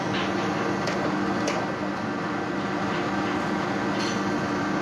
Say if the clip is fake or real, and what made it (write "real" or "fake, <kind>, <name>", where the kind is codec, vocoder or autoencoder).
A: real